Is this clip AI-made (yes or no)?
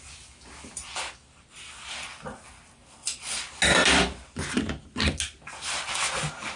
no